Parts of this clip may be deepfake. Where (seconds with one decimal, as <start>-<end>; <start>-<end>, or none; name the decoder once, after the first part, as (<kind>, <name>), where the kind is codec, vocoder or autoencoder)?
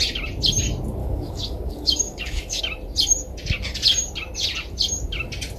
1.0-2.6 (codec, DAC)